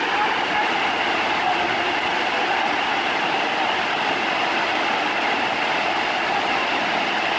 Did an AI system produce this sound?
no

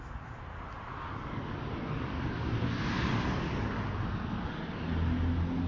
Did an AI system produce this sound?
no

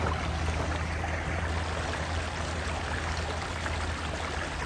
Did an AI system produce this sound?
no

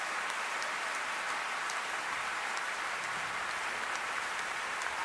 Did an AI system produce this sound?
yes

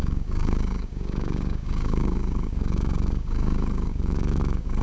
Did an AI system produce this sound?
yes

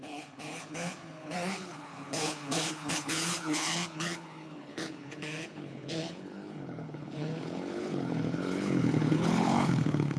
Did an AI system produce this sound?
yes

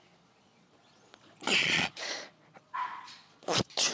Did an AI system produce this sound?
yes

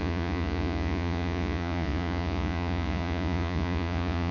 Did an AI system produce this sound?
yes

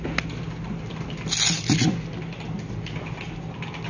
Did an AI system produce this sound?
no